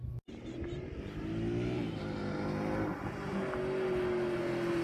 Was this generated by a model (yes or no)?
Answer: no